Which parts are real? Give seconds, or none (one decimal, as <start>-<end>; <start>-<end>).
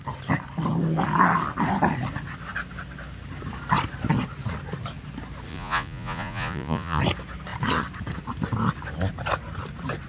0.0-5.5; 7.0-10.1